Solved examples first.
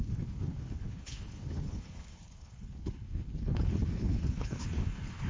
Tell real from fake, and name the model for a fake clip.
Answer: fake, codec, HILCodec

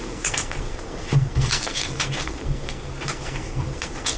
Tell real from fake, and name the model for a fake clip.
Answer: fake, codec, SNAC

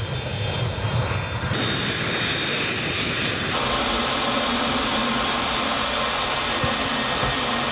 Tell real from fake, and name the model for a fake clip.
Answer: real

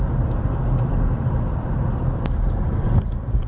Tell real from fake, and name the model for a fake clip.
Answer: real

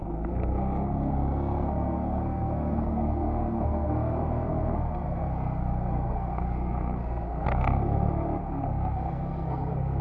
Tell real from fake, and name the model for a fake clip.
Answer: fake, codec, SNAC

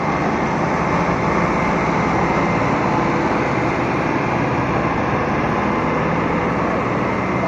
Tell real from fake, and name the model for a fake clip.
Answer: real